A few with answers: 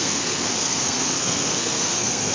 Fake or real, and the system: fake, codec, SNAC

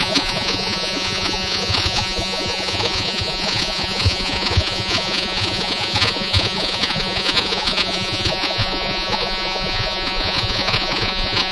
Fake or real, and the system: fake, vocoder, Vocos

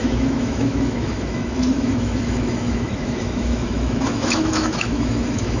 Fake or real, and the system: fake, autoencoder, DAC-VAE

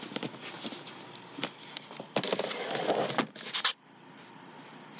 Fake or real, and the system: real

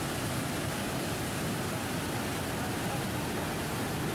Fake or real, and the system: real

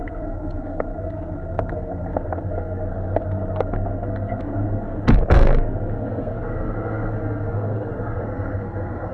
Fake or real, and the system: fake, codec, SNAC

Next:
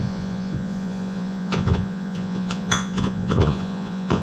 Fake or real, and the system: fake, vocoder, Vocos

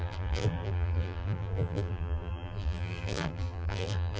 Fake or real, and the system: fake, vocoder, BigVGAN v2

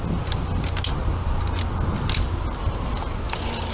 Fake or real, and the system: real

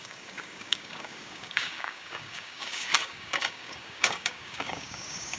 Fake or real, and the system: fake, codec, DAC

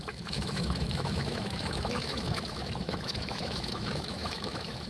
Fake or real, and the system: fake, autoencoder, DAC-VAE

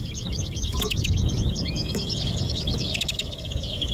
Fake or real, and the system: fake, codec, DAC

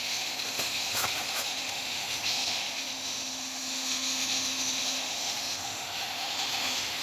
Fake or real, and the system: fake, autoencoder, DAC-VAE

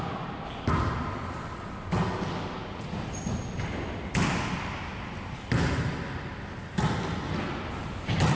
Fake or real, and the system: real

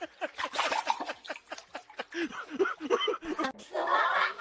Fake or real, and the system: real